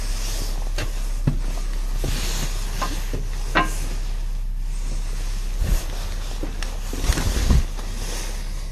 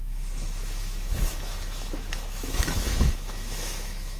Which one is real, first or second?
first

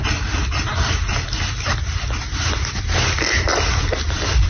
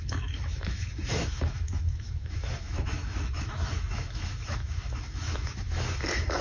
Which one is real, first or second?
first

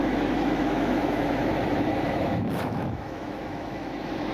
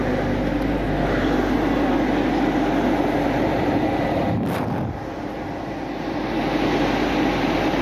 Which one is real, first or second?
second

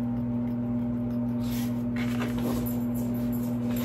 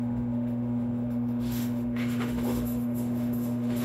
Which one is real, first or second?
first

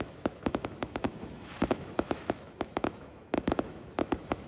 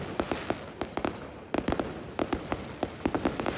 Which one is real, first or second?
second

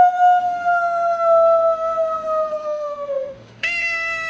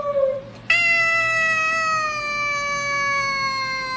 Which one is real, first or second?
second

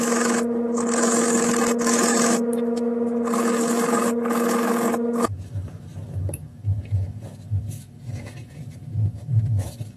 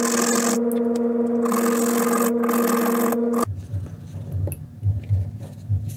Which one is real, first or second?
second